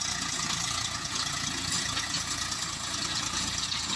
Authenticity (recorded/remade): remade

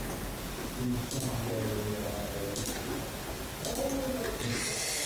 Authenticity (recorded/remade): recorded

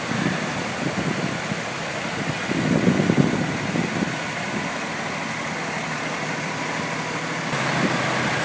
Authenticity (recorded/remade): recorded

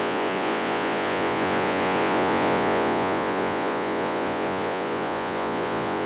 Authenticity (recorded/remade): remade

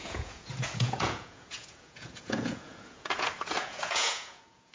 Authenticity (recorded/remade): remade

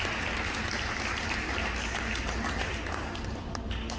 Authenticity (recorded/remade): recorded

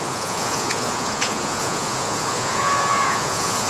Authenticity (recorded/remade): remade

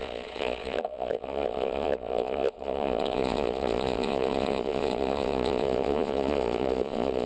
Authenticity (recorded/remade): remade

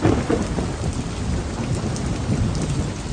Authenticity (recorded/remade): recorded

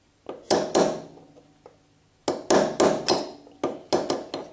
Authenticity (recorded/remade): recorded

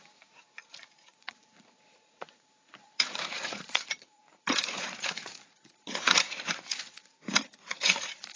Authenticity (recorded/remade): remade